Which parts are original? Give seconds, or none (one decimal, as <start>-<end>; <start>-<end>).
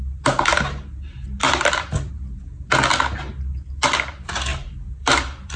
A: 0.0-1.4; 2.1-4.5